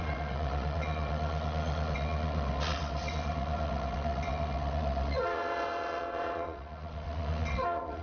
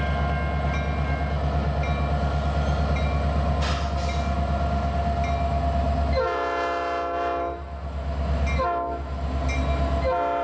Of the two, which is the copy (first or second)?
first